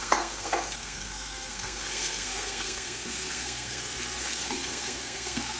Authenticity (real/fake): fake